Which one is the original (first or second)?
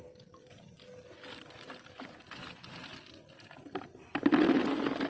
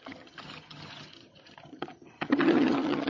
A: first